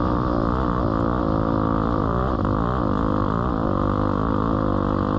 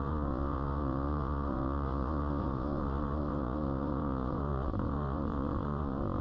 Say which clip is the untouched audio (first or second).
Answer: first